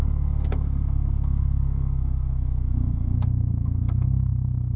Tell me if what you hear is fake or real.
fake